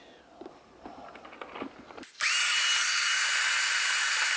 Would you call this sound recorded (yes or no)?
yes